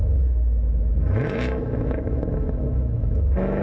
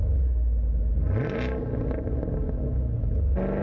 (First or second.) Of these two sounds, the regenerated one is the first